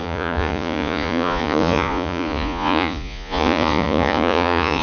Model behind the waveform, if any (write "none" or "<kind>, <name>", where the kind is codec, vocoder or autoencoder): vocoder, Vocos